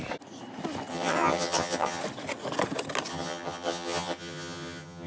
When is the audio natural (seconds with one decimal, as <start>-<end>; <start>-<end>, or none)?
0.0-0.9; 2.0-3.1